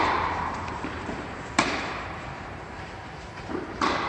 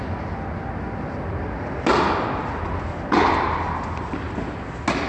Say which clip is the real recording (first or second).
second